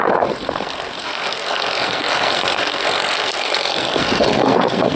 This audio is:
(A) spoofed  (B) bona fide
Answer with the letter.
A